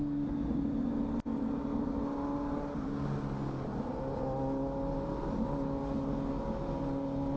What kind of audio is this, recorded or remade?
recorded